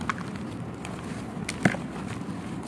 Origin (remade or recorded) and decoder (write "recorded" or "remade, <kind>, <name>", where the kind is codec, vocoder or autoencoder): recorded